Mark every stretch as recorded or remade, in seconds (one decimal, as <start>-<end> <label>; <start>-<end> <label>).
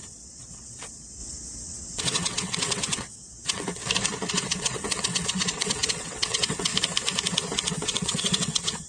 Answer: 0.0-3.8 remade; 3.8-4.3 recorded; 4.3-6.7 remade; 6.7-7.7 recorded; 7.7-8.9 remade